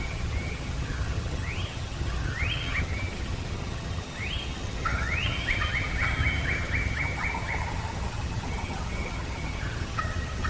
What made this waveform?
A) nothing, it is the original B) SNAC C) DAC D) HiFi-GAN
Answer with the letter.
D